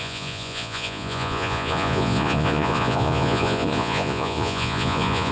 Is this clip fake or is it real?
fake